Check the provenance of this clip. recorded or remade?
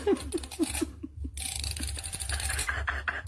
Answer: recorded